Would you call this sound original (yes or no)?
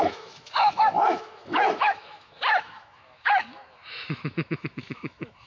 no